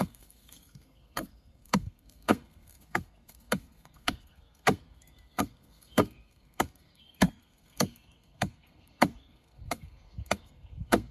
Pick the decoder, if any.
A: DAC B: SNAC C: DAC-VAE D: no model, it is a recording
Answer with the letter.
B